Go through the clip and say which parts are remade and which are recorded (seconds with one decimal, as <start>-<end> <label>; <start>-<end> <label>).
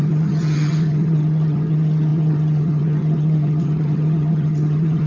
0.0-5.1 remade